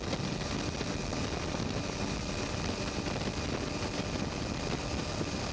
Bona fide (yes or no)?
yes